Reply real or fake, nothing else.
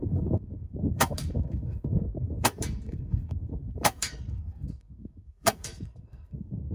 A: fake